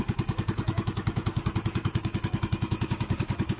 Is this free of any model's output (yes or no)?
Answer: no